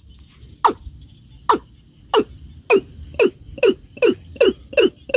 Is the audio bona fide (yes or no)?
yes